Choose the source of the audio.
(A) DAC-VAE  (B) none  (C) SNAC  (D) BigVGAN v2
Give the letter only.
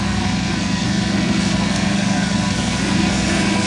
C